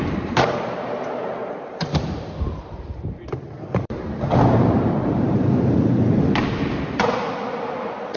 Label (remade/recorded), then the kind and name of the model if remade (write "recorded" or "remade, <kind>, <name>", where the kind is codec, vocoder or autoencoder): remade, vocoder, BigVGAN v2